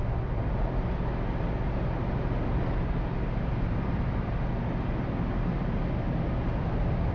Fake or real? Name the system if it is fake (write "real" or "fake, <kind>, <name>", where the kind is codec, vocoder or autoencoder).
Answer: real